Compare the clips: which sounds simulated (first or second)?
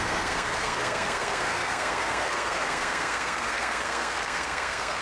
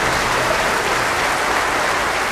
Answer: first